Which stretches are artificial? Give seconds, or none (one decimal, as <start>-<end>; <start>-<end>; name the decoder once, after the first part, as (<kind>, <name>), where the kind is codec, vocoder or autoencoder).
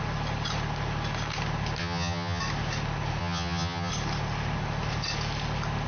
1.8-2.4 (vocoder, HiFi-GAN); 3.2-3.9